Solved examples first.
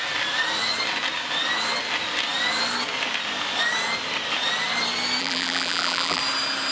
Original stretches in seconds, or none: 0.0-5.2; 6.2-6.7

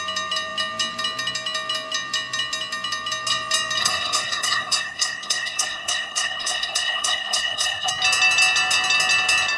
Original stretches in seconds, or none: 0.0-3.8; 7.9-9.6